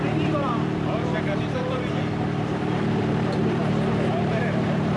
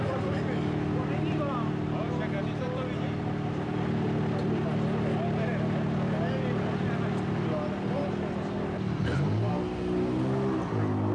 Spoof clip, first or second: first